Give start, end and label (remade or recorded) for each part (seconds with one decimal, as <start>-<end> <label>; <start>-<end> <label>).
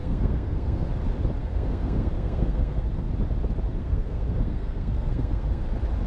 0.0-0.9 remade; 0.9-1.4 recorded; 1.4-3.1 remade; 3.1-3.8 recorded; 3.8-5.6 remade; 5.6-6.1 recorded